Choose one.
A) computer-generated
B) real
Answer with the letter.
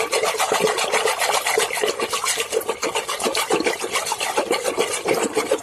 B